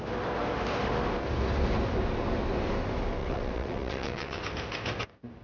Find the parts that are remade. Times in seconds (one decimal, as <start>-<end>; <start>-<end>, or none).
3.2-4.4